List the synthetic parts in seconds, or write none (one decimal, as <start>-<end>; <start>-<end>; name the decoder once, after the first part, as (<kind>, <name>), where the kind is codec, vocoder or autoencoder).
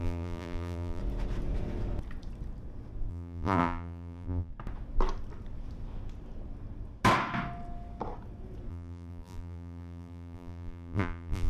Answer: 0.0-1.0 (vocoder, BigVGAN v2); 3.1-4.5; 8.7-11.5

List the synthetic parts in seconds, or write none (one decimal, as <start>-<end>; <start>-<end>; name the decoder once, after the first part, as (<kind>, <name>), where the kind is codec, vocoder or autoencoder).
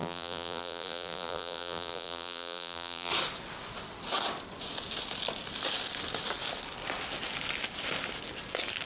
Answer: 0.0-3.1 (vocoder, BigVGAN v2)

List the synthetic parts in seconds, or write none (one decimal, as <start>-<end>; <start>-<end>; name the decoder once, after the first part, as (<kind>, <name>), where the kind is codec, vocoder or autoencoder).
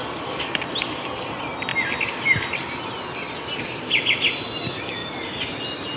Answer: 5.0-5.6 (vocoder, BigVGAN v2)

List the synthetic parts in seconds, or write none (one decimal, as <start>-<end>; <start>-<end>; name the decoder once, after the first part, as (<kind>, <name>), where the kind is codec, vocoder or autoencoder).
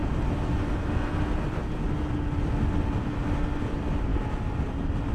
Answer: 4.1-5.1 (vocoder, BigVGAN v2)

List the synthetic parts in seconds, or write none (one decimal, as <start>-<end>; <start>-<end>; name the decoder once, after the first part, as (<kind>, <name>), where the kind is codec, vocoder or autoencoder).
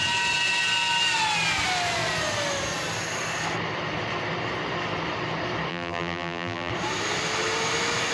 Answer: 5.7-6.7 (vocoder, BigVGAN v2)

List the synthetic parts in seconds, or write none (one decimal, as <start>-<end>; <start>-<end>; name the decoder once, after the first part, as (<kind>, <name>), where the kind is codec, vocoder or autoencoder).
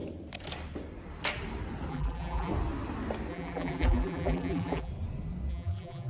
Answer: 1.9-2.5 (vocoder, BigVGAN v2); 3.3-4.9; 5.5-6.1